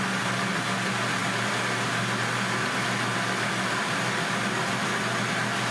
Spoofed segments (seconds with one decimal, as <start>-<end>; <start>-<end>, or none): none